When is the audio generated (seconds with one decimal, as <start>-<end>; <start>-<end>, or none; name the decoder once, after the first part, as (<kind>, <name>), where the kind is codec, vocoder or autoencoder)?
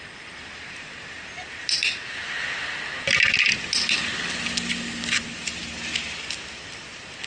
none